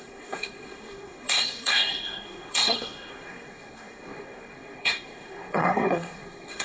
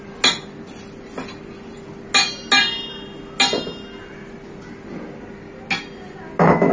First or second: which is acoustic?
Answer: second